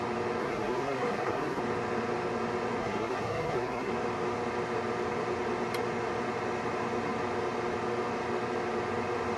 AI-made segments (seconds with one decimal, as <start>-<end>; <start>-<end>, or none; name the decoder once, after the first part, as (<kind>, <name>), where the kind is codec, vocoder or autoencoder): 0.4-1.6 (codec, SNAC); 2.8-3.9